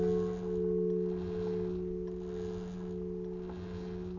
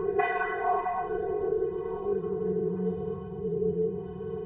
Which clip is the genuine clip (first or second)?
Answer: first